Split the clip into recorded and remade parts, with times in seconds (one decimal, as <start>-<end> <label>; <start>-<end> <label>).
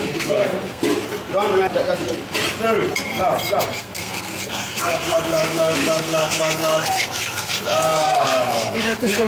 0.0-0.8 remade; 0.8-3.6 recorded; 3.6-9.3 remade